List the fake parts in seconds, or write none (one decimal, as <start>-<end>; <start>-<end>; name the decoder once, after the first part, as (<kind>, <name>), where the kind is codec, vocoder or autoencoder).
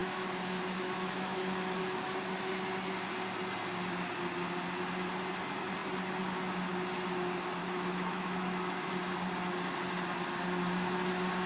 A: 0.0-1.8 (autoencoder, DAC-VAE); 7.6-8.9